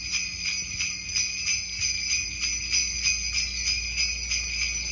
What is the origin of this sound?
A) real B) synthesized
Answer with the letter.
A